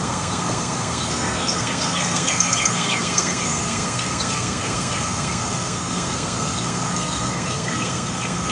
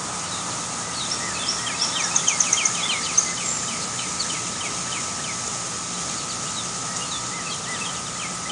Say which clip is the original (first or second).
second